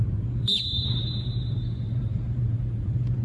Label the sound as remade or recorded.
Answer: remade